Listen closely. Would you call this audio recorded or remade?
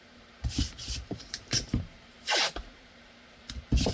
remade